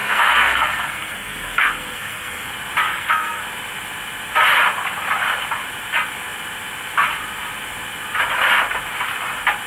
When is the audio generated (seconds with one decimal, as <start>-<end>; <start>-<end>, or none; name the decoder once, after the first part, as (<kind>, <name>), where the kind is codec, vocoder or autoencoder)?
0.0-2.5 (codec, SNAC); 2.9-3.4

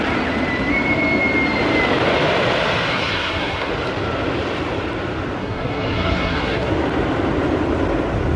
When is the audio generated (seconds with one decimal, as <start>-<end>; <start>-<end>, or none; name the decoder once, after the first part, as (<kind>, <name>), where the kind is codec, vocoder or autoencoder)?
2.9-3.7 (codec, SNAC); 5.4-6.7

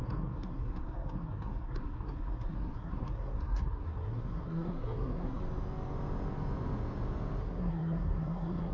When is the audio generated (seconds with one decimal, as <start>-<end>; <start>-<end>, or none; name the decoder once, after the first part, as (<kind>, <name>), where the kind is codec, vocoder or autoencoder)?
0.0-5.4 (codec, SNAC); 7.4-8.7